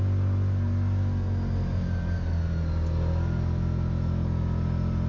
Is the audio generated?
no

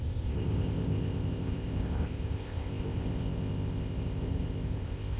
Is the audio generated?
yes